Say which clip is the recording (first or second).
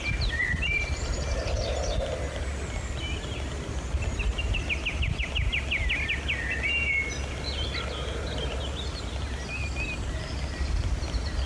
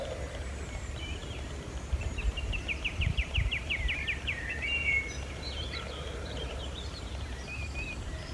first